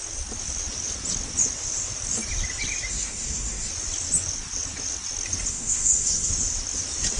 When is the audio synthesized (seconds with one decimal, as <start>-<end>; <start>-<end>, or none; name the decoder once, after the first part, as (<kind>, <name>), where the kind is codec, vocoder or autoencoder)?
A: 2.9-3.7 (codec, SNAC); 5.5-6.3